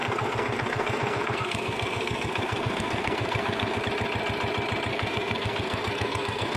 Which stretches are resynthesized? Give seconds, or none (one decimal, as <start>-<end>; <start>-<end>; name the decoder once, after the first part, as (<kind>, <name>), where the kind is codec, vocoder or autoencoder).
0.0-3.8 (codec, SNAC); 4.9-6.6